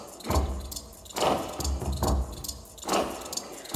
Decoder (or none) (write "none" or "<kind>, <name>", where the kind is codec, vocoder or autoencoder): none